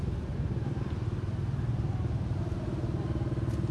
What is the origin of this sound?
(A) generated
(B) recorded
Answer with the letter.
B